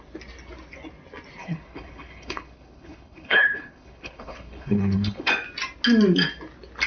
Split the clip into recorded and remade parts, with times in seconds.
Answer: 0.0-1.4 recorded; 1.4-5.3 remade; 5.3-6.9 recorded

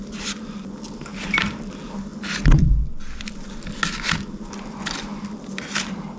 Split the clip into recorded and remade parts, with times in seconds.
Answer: 0.0-1.1 recorded; 1.1-1.6 remade; 1.6-6.2 recorded

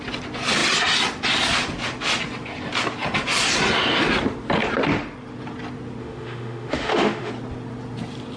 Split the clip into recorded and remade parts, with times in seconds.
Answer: 0.0-6.0 recorded; 6.0-7.3 remade; 7.3-8.4 recorded

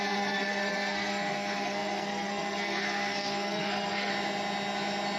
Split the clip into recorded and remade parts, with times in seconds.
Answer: 0.0-4.1 remade; 4.1-5.2 recorded

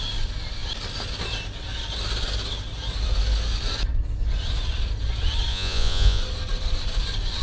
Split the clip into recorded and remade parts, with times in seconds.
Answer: 0.0-5.5 recorded; 5.5-6.2 remade; 6.2-7.4 recorded

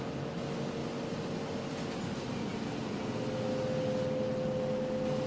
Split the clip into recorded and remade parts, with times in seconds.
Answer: 0.0-5.3 recorded

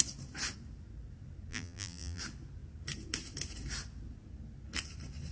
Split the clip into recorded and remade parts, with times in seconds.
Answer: 0.0-1.5 recorded; 1.5-2.2 remade; 2.2-5.3 recorded